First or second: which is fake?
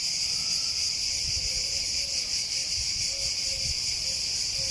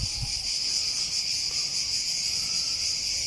first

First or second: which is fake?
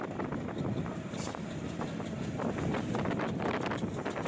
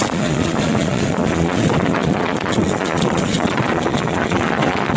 second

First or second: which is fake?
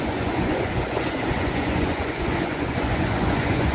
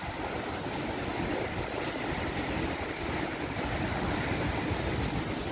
first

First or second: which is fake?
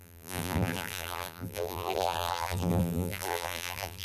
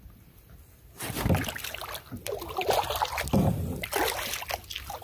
first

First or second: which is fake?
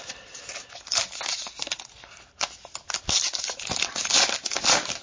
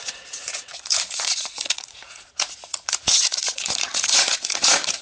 second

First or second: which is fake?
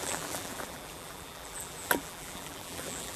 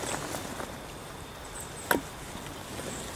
first